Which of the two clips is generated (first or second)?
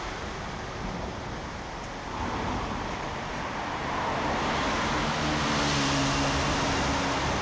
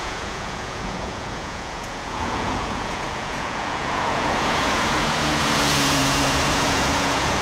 second